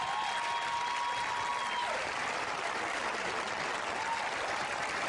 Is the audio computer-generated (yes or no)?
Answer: no